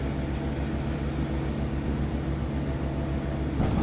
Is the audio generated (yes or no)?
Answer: no